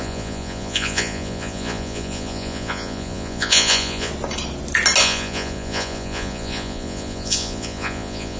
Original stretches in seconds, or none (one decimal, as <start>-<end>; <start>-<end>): 4.1-5.0